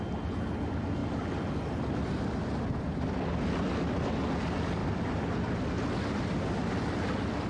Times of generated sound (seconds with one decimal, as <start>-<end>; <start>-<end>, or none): none

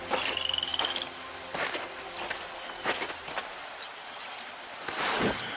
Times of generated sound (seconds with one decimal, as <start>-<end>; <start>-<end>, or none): none